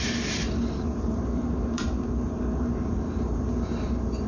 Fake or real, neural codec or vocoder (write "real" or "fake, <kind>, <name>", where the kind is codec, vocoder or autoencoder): fake, vocoder, BigVGAN v2